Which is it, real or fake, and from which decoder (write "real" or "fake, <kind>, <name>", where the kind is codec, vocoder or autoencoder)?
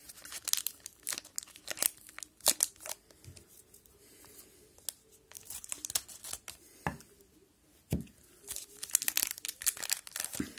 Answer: real